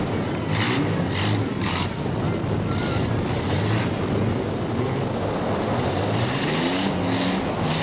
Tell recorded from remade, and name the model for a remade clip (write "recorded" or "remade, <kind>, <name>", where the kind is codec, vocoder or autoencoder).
recorded